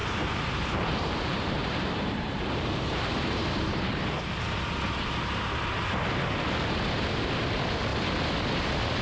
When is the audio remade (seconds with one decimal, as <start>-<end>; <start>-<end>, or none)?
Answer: 0.0-4.0